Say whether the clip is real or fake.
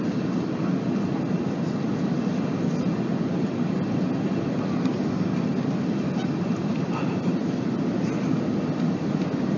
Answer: real